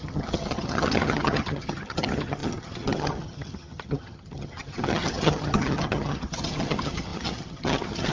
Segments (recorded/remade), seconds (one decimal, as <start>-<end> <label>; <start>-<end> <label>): 0.0-8.1 remade